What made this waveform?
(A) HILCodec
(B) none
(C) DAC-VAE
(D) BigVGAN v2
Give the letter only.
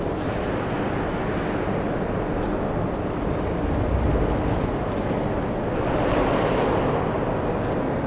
B